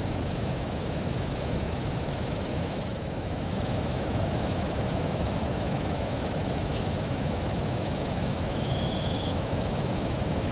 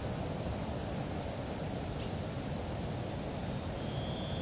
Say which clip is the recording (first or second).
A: second